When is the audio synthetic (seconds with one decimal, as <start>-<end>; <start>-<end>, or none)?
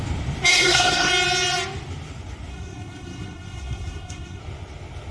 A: 0.5-1.1; 2.5-4.4